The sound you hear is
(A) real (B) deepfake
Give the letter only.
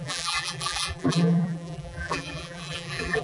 B